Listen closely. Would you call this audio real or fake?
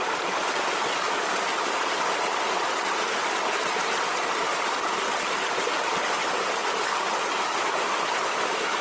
real